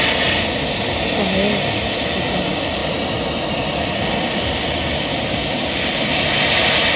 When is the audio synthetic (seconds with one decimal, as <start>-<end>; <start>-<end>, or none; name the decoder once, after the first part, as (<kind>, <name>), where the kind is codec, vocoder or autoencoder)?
none